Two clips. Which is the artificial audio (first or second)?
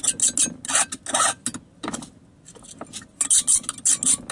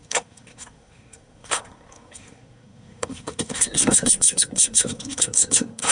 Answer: second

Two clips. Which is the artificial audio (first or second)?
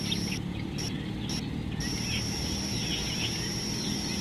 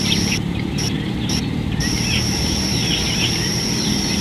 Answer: second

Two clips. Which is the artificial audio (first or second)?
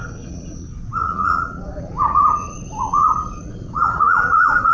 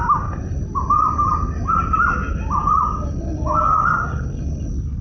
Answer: first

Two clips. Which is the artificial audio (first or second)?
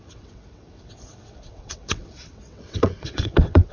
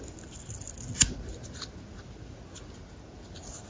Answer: first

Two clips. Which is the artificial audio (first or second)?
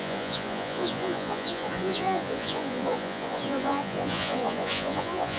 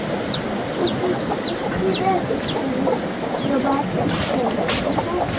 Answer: first